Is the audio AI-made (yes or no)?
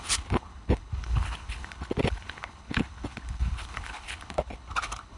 yes